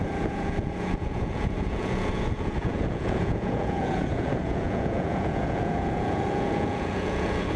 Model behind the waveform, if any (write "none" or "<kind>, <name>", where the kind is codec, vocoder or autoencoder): vocoder, Vocos